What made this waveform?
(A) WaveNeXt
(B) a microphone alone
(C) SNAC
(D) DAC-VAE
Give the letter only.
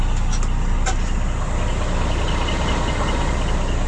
B